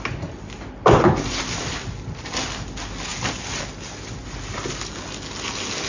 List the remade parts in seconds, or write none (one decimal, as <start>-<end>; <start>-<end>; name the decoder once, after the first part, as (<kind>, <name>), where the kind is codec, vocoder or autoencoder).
none

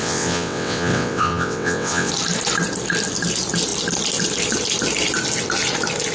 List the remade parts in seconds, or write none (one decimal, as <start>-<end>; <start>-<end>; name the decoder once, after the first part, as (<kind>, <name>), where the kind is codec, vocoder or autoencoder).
0.0-2.1 (vocoder, WaveNeXt)

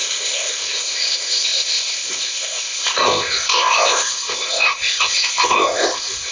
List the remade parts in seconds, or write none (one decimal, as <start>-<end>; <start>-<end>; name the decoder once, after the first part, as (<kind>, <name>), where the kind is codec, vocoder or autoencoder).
0.0-6.3 (codec, ZipCodec)

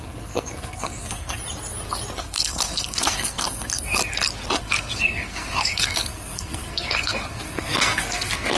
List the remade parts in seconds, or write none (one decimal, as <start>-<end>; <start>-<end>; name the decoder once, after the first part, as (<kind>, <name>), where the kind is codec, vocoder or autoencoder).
0.0-1.4 (codec, SNAC); 2.2-4.0; 4.6-8.6